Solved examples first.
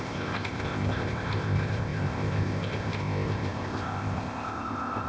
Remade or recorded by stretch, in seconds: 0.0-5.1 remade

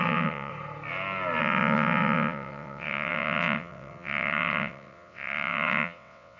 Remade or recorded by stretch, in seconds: 0.0-0.5 remade; 0.5-1.4 recorded; 1.4-6.4 remade

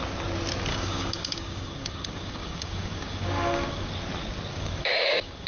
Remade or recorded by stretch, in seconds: 0.0-0.7 recorded; 0.7-3.9 remade; 3.9-4.5 recorded; 4.5-5.5 remade

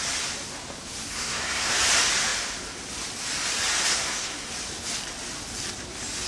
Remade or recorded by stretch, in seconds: 0.0-1.1 recorded; 1.1-1.8 remade; 1.8-3.9 recorded; 3.9-4.5 remade; 4.5-6.3 recorded

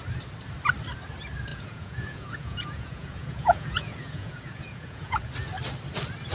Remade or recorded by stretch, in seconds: 0.0-1.5 recorded; 1.5-5.3 remade; 5.3-6.3 recorded

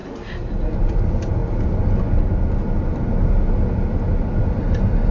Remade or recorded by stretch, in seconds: 0.0-5.1 recorded

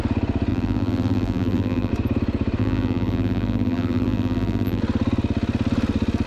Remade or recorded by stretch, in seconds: 0.0-0.5 recorded; 0.5-1.9 remade; 1.9-2.6 recorded; 2.6-4.8 remade; 4.8-6.3 recorded

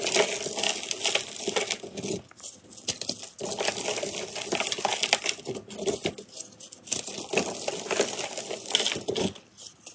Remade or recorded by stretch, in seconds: 0.0-9.9 recorded